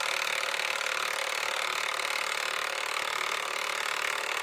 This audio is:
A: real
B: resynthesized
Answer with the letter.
A